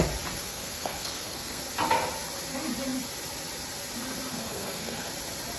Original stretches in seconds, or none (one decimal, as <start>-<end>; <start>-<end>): 0.0-0.4; 1.6-4.3; 5.1-5.6